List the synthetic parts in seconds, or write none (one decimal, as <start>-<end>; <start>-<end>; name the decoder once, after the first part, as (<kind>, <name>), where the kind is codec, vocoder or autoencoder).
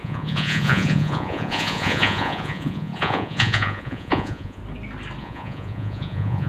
0.0-4.6 (vocoder, Vocos); 5.2-6.5